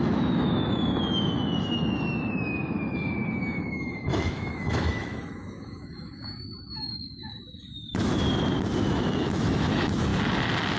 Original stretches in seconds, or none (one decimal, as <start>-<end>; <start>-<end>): 8.1-8.8; 10.1-10.8